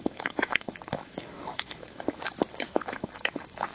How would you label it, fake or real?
fake